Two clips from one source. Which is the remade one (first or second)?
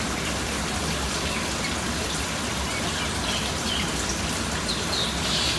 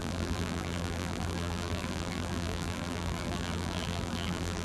second